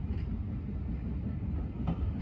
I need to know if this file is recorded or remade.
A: recorded